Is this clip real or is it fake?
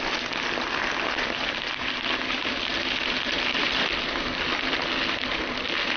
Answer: real